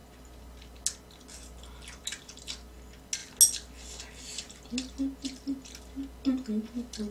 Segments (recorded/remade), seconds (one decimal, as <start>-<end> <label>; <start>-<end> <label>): 0.0-7.1 recorded